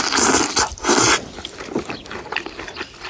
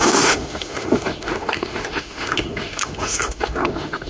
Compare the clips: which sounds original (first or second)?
first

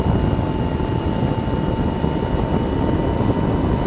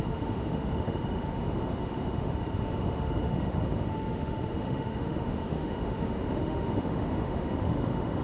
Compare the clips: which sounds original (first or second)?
first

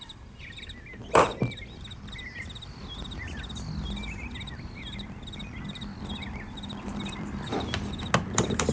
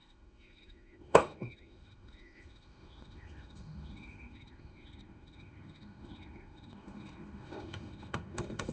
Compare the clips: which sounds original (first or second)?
first